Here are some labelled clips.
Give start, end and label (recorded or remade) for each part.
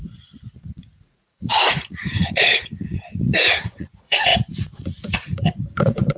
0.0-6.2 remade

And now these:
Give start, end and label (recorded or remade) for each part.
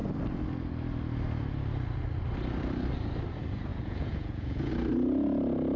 0.0-3.7 recorded; 3.7-4.7 remade; 4.7-5.8 recorded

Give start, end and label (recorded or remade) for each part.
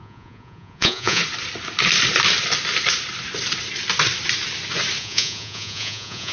0.0-1.2 remade; 1.2-5.0 recorded; 5.0-6.3 remade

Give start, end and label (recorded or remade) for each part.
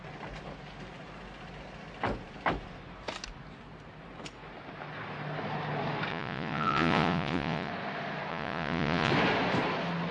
0.0-6.1 recorded; 6.1-7.7 remade; 7.7-8.3 recorded; 8.3-9.1 remade; 9.1-10.1 recorded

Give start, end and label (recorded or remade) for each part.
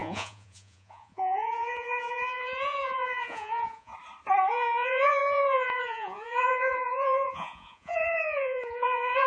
0.0-3.9 remade; 3.9-4.5 recorded; 4.5-9.3 remade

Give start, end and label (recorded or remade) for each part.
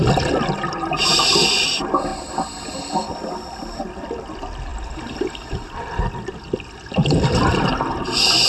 0.0-8.5 recorded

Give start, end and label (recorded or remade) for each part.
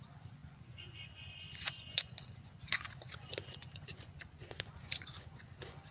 0.0-5.9 remade